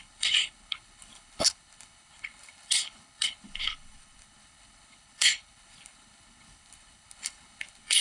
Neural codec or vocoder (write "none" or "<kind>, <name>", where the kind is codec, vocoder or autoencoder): codec, HILCodec